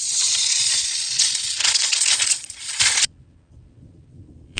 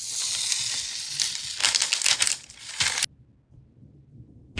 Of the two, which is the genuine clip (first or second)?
second